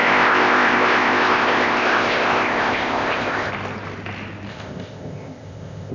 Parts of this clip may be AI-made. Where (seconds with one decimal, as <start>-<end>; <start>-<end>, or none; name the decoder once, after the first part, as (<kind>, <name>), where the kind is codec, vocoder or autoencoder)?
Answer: 0.0-3.5 (codec, ZipCodec); 4.5-5.9